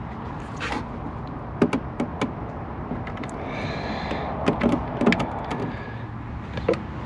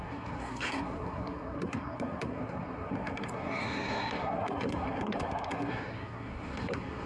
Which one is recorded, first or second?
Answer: first